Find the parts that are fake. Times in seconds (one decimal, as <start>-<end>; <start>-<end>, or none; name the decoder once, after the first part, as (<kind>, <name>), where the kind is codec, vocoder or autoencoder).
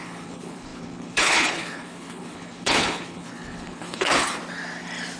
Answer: 0.0-4.4 (codec, HILCodec)